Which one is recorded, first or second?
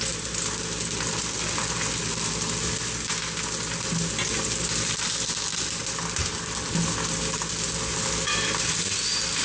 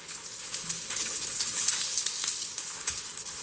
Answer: first